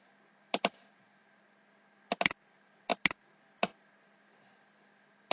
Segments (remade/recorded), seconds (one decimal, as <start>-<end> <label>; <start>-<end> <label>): 0.0-1.2 remade; 1.2-2.5 recorded; 2.5-2.9 remade; 2.9-5.3 recorded